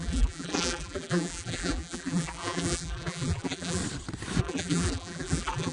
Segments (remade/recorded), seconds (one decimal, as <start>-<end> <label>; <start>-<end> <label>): 0.0-3.8 remade; 3.8-4.4 recorded; 4.4-5.7 remade